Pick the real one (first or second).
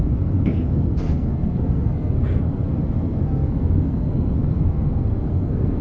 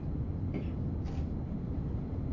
second